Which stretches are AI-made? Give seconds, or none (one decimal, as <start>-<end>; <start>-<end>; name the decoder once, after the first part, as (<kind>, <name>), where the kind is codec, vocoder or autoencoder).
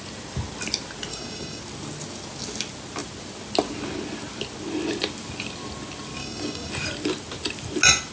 1.1-1.6 (codec, DAC); 6.2-6.7